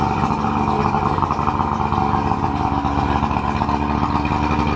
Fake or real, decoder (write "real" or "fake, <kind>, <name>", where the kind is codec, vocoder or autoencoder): real